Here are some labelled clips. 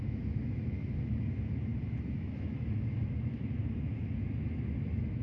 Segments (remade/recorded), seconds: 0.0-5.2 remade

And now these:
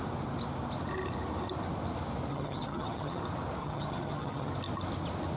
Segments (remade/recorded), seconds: 0.0-2.3 recorded; 2.3-3.2 remade; 3.2-3.6 recorded; 3.6-4.5 remade; 4.5-5.4 recorded